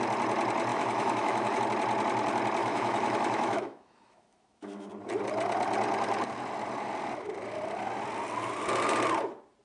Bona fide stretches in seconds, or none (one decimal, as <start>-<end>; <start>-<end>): 0.0-0.7; 1.6-2.6; 4.9-9.6